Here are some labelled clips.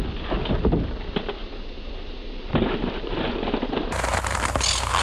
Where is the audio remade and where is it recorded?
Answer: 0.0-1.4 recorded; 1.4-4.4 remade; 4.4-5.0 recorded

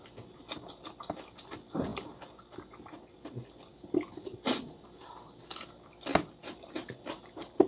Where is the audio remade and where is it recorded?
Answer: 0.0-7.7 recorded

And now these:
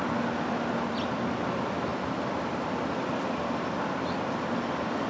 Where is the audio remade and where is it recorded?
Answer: 0.0-5.1 recorded

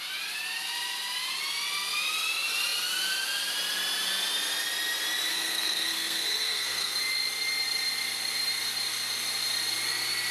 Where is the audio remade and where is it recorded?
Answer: 0.0-5.3 recorded; 5.3-6.9 remade; 6.9-10.3 recorded